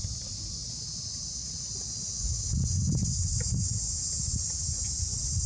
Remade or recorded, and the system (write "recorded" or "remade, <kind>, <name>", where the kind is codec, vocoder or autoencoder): recorded